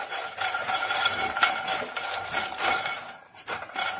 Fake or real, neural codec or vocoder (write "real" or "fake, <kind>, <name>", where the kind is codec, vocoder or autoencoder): fake, vocoder, BigVGAN v2